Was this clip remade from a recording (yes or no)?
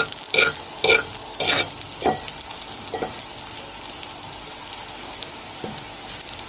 no